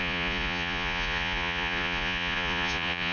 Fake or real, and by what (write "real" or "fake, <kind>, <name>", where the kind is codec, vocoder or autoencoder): fake, vocoder, Vocos